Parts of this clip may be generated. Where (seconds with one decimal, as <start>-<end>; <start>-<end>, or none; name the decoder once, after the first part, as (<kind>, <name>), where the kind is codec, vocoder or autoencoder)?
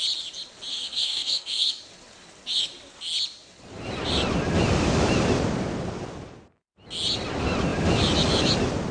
0.7-1.8 (codec, SNAC)